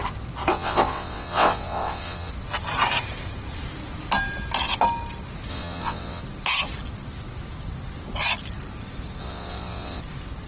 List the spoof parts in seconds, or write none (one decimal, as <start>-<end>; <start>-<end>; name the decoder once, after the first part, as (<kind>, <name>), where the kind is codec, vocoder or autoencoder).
0.5-2.3 (vocoder, WaveNeXt); 5.5-6.2; 9.2-10.0